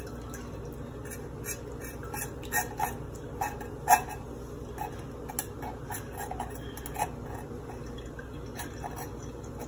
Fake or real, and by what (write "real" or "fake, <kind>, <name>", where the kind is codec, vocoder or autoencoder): real